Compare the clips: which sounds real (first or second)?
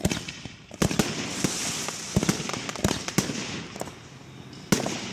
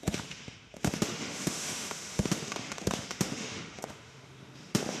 first